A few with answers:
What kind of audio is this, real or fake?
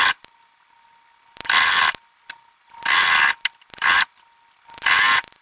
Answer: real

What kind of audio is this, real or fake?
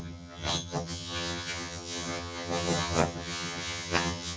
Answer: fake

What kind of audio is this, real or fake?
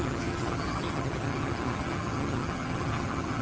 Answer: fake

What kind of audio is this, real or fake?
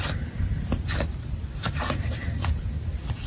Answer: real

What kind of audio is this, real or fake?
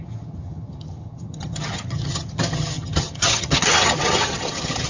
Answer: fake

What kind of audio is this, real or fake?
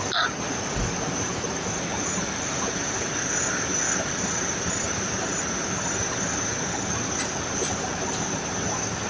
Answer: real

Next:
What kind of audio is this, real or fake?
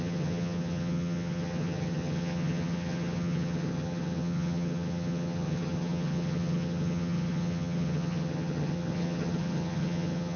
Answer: fake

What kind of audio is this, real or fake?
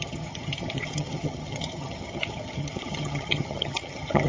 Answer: fake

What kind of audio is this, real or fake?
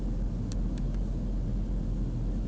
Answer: real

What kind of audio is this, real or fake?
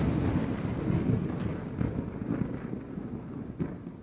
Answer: real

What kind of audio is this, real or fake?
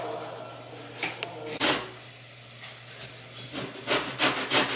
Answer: real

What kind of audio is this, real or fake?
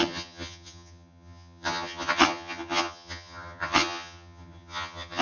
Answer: fake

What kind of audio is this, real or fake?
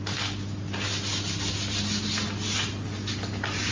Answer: real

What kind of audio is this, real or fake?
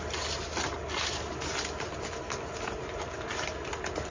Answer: real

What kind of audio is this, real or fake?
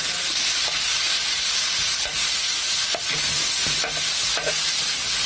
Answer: real